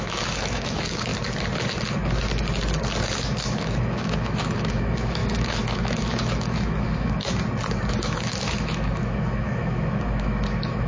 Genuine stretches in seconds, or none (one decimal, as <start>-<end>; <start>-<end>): 1.1-3.4; 7.2-7.9